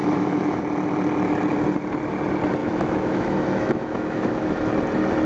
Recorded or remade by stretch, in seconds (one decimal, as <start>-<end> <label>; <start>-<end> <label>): 0.0-0.6 remade; 0.6-2.6 recorded; 2.6-4.7 remade; 4.7-5.3 recorded